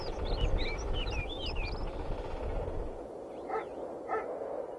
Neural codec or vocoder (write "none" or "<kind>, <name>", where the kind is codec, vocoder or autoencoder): none